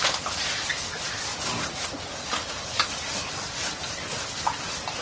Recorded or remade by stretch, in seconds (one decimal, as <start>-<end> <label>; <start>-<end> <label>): 0.0-5.0 recorded